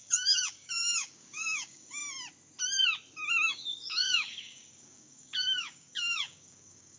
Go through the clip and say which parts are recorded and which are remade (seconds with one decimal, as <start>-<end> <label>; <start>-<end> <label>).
0.0-2.0 remade; 2.0-3.5 recorded; 3.5-7.0 remade